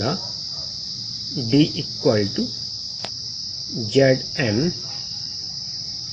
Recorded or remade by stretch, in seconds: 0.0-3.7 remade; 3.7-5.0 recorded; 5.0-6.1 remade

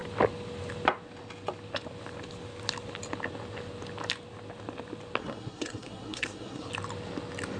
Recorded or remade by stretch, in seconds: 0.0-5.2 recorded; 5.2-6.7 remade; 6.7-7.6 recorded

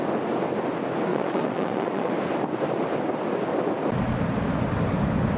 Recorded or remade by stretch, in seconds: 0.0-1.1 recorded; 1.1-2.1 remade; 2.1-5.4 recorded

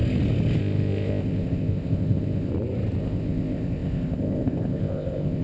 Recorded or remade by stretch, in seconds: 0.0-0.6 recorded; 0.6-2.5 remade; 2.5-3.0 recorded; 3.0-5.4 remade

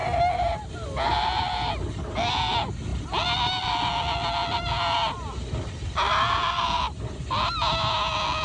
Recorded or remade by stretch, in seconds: 0.0-8.4 recorded